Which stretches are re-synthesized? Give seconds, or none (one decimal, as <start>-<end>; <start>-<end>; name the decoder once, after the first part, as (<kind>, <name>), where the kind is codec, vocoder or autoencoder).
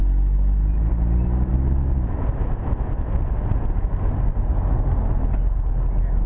none